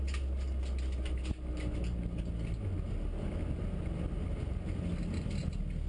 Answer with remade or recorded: recorded